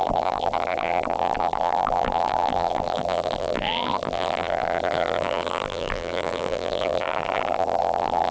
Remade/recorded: remade